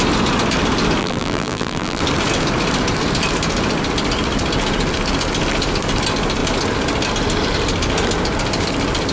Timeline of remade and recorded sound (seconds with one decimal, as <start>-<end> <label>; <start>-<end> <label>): 0.0-1.0 recorded; 1.0-2.0 remade; 2.0-9.1 recorded